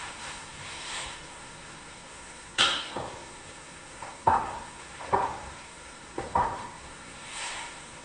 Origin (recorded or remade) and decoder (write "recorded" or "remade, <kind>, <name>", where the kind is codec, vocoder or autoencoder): remade, codec, SNAC